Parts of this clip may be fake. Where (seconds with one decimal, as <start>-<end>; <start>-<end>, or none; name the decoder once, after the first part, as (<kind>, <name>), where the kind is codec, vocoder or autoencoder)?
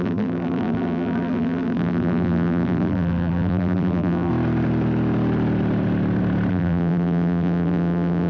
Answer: 0.0-4.3 (vocoder, BigVGAN v2); 6.5-8.3